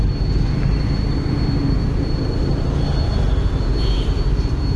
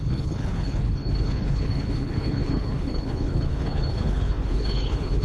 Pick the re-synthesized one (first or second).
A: second